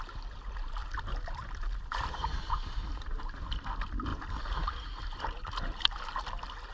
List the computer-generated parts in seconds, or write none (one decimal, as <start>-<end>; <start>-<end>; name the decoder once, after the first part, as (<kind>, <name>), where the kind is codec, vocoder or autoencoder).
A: 0.8-3.2 (vocoder, BigVGAN v2); 4.1-5.9